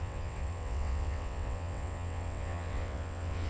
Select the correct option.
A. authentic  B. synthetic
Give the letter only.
B